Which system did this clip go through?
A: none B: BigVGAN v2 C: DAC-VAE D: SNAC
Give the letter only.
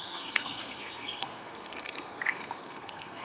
D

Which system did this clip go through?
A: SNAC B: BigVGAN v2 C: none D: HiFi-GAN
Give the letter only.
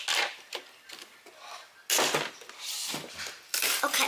C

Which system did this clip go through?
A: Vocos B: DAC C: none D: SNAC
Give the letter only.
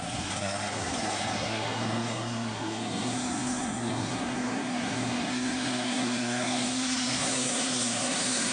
D